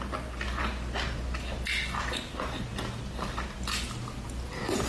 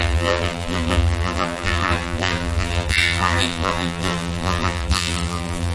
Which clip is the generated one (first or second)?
second